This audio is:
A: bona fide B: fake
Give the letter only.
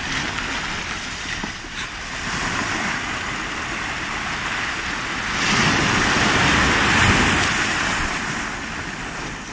A